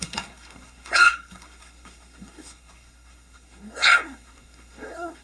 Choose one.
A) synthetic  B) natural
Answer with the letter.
A